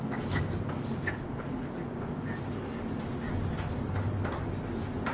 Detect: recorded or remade recorded